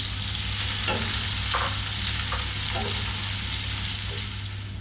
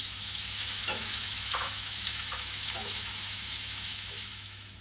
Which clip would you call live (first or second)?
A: first